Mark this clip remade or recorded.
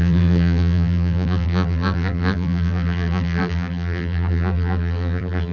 remade